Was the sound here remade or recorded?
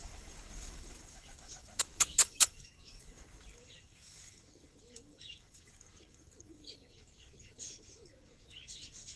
remade